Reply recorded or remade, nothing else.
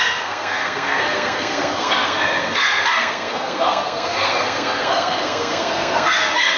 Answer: remade